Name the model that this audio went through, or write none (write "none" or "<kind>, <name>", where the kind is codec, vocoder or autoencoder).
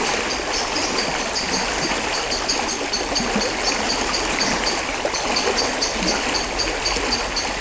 none